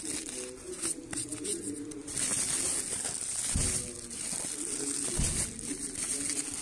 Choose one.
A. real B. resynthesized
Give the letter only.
A